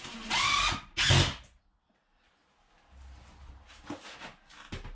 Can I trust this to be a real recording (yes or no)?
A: yes